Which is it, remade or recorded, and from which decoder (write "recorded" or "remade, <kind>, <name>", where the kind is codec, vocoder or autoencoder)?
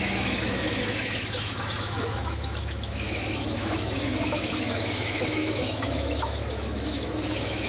remade, autoencoder, DAC-VAE